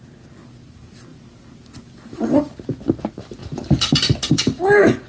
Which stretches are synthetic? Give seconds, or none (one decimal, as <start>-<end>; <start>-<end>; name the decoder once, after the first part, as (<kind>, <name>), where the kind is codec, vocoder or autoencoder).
none